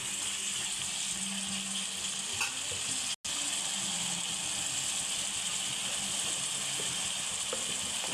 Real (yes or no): yes